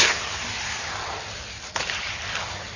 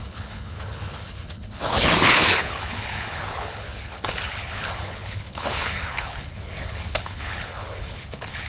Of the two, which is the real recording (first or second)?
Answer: first